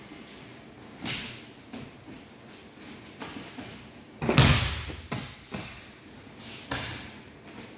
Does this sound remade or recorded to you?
recorded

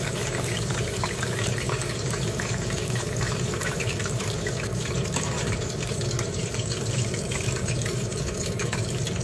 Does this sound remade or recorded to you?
remade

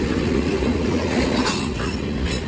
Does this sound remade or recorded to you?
remade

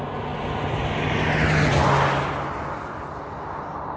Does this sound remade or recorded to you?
recorded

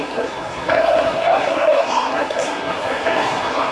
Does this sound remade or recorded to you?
remade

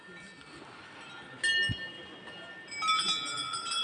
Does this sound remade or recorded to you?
recorded